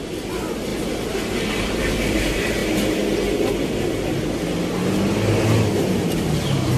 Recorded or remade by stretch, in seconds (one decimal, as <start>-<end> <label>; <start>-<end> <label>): 0.0-0.7 remade; 0.7-1.5 recorded; 1.5-2.6 remade; 2.6-6.8 recorded